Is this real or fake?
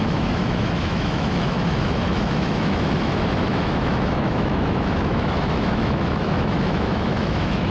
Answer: fake